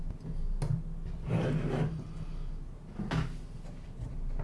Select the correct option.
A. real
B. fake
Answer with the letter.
A